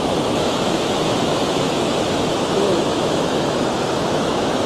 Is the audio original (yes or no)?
no